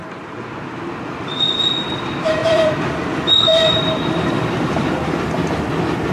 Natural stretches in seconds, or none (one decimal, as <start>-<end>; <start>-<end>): 0.0-2.4; 3.1-3.5; 5.2-6.1